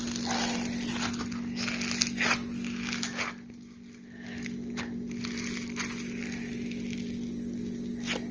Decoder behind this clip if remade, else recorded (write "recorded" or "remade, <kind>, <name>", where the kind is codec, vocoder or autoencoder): recorded